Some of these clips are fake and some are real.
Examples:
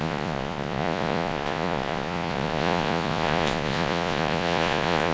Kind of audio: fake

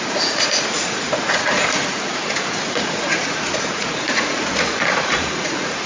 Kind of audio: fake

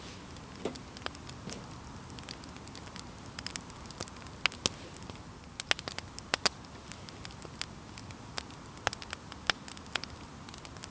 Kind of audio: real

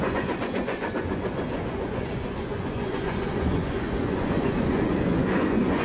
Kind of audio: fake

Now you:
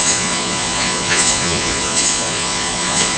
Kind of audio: fake